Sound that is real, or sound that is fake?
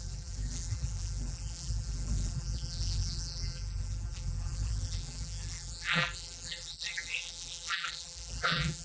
fake